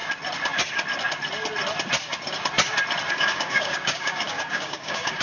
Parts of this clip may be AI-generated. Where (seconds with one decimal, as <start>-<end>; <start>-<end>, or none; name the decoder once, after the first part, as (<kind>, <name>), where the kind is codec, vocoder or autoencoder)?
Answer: 3.1-5.2 (codec, DAC)